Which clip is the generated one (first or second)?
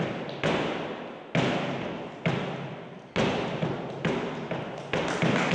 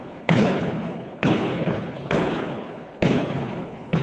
second